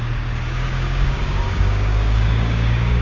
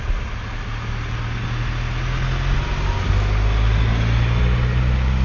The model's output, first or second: first